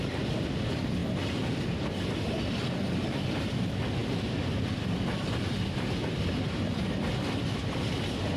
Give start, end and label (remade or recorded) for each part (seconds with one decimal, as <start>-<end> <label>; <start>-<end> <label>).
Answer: 0.0-1.0 remade; 1.0-1.6 recorded; 1.6-8.4 remade